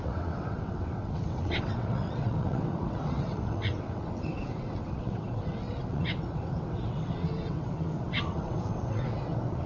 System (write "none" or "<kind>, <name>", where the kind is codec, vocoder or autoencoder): vocoder, WaveNeXt